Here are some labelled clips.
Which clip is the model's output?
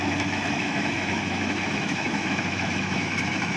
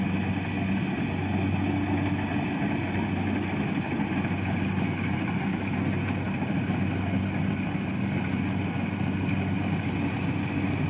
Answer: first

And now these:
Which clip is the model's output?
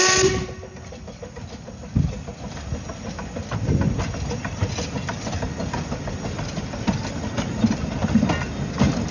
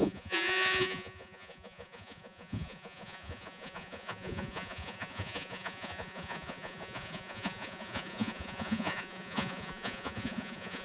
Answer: second